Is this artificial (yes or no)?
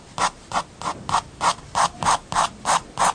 no